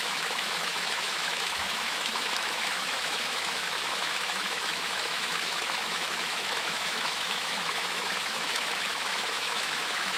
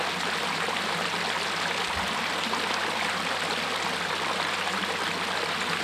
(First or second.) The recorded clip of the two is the second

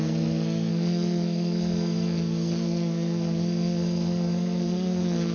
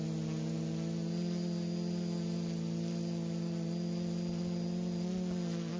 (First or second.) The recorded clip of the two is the second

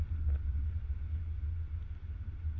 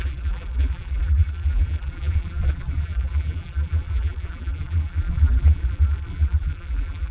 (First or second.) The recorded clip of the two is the first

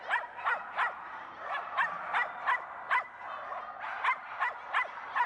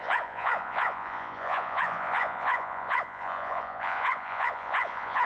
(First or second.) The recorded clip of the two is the first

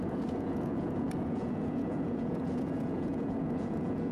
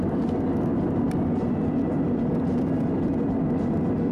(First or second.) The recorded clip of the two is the second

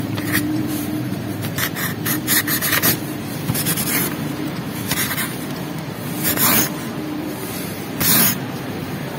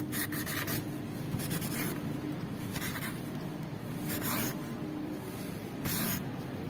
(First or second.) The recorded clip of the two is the second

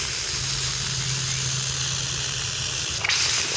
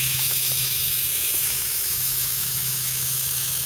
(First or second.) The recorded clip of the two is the first